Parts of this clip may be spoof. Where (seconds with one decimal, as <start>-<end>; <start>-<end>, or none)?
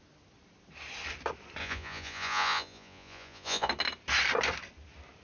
1.6-3.7